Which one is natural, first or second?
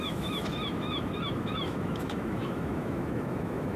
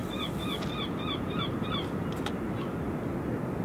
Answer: second